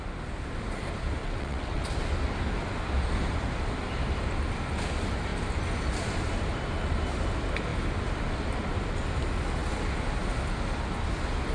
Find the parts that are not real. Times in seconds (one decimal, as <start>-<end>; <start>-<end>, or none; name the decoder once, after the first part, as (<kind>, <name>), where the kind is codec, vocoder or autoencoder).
1.2-1.8 (vocoder, WaveNeXt)